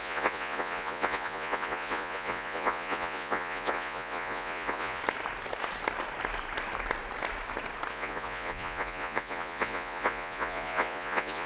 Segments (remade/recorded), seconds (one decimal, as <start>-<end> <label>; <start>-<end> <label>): 0.0-5.0 remade; 5.0-7.9 recorded; 7.9-11.5 remade